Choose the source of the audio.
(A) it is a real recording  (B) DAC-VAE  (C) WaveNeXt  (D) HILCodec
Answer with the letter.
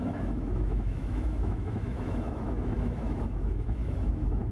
B